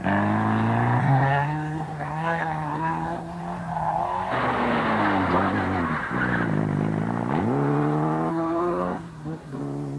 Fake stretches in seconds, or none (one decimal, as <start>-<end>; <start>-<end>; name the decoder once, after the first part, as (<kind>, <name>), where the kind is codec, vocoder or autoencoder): 1.0-3.4 (codec, SNAC); 8.3-9.6